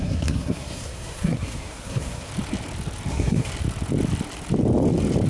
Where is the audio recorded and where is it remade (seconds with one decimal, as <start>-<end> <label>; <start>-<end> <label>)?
0.0-2.3 remade; 2.3-3.1 recorded; 3.1-3.5 remade; 3.5-5.3 recorded